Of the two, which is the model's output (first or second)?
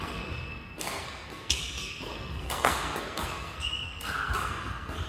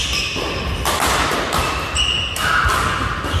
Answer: first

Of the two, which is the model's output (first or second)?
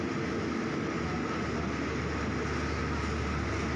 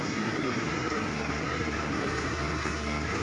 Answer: second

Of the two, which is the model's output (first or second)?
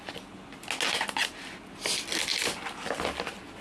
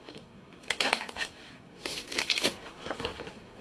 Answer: second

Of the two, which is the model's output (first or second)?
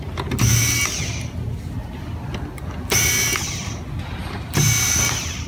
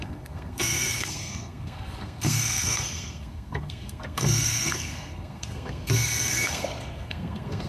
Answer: second